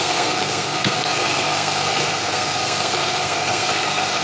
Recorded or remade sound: remade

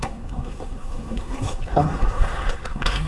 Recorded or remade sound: remade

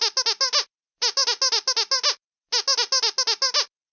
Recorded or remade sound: recorded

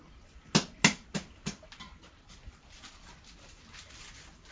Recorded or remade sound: recorded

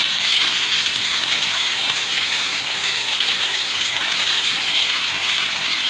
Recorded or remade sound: remade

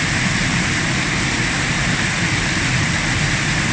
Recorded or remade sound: recorded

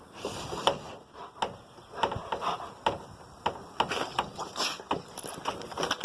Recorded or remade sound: recorded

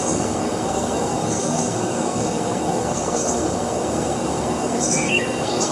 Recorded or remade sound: remade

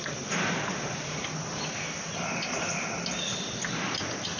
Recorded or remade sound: recorded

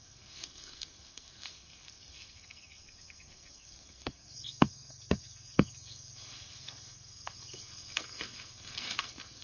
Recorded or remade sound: remade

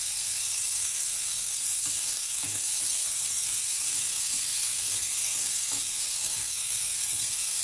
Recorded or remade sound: remade